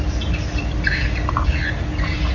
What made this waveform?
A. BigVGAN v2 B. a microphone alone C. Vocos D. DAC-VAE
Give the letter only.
B